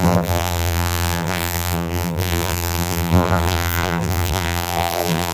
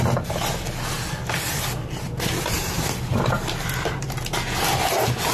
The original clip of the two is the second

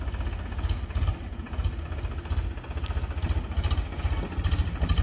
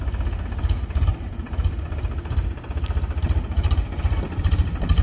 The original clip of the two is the first